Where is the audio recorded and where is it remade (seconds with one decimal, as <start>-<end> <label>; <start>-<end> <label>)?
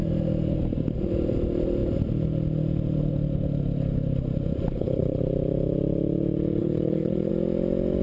0.0-4.7 recorded; 4.7-5.2 remade; 5.2-6.6 recorded; 6.6-7.3 remade; 7.3-8.0 recorded